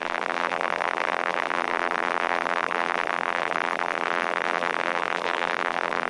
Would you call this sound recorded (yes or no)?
no